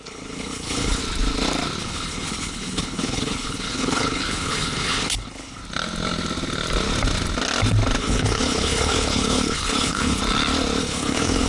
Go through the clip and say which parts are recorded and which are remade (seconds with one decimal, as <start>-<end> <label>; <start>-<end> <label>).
0.0-1.0 remade; 1.0-1.8 recorded; 1.8-5.6 remade; 5.6-8.0 recorded; 8.0-10.2 remade; 10.2-10.8 recorded; 10.8-11.5 remade